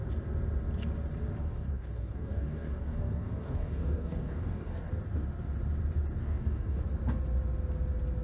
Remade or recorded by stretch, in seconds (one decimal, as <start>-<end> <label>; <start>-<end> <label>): 0.0-1.4 recorded; 1.4-4.9 remade; 4.9-6.2 recorded; 6.2-6.8 remade; 6.8-8.2 recorded